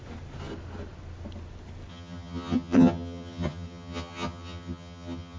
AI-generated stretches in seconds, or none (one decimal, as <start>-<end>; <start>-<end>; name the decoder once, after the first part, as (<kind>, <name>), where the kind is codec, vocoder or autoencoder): 1.9-5.4 (vocoder, HiFi-GAN)